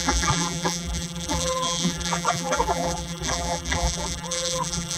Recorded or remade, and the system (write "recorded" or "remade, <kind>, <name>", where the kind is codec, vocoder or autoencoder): remade, vocoder, BigVGAN v2